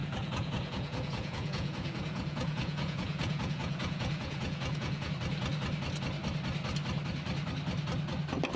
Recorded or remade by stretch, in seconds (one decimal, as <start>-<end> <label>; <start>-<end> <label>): 0.0-5.1 remade; 5.1-8.6 recorded